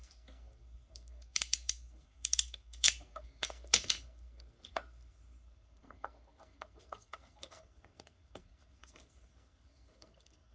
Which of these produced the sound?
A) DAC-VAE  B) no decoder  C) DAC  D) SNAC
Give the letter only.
D